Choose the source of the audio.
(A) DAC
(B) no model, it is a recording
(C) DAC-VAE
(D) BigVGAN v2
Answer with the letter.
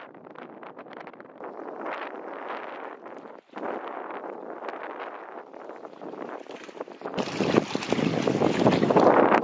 B